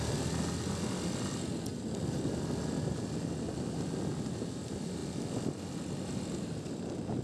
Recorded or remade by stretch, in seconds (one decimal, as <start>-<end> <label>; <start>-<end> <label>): 0.0-7.2 recorded